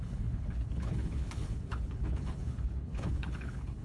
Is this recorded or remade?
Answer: remade